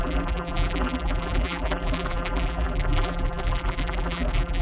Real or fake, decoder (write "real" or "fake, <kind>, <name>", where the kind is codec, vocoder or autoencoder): fake, vocoder, BigVGAN v2